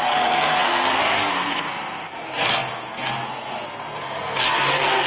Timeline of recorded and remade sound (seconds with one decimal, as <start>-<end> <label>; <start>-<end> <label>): 0.0-5.1 remade